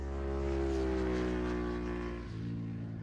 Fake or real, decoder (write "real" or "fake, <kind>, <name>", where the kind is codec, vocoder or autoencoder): real